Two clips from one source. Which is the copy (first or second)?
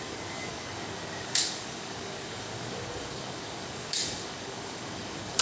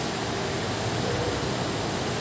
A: first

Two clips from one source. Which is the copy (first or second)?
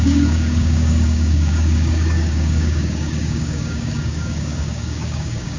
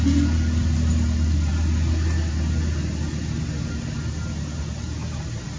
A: first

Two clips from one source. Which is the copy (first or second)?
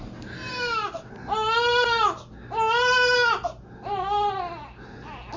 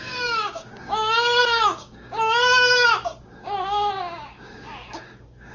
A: second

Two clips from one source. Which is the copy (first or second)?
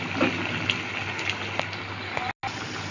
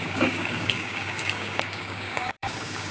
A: second